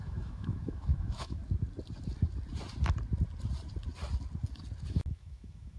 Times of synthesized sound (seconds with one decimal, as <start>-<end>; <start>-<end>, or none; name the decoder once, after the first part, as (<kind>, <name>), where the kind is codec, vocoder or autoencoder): 0.0-1.4 (autoencoder, DAC-VAE); 4.9-5.8

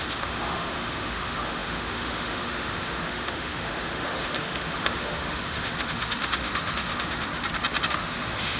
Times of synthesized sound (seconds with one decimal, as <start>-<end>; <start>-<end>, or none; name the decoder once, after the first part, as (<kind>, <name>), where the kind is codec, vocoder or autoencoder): 0.0-7.3 (autoencoder, DAC-VAE); 7.9-8.6

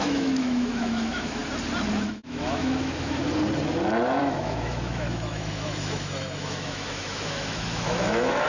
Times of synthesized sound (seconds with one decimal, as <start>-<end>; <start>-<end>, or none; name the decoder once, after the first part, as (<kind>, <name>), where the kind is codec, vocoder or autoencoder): 0.0-1.4 (autoencoder, DAC-VAE); 2.1-3.2; 4.2-8.5

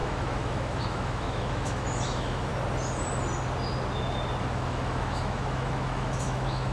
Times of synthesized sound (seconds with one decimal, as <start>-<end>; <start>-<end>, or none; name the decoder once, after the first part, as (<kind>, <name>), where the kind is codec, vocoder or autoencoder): 0.0-2.5 (autoencoder, DAC-VAE); 4.4-6.7